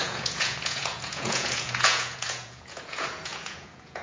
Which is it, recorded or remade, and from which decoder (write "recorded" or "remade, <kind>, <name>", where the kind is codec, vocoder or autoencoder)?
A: remade, vocoder, Vocos